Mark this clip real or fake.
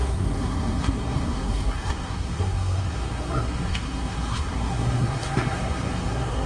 fake